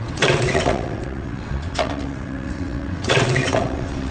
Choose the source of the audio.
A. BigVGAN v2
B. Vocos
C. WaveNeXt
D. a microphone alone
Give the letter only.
C